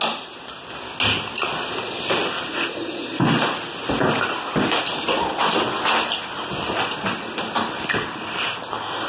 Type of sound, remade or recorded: recorded